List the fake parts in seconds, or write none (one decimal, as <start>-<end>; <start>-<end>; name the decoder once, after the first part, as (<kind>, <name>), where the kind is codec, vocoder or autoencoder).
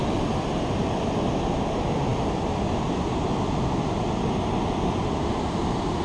none